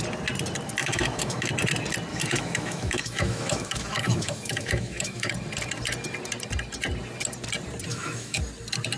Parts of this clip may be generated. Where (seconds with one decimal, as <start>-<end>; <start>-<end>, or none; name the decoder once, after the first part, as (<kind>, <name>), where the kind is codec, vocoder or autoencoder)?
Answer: 0.8-1.5 (autoencoder, DAC-VAE); 2.1-5.3; 7.9-8.4